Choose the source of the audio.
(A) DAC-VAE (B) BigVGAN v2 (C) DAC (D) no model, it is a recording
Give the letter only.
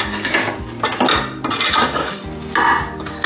D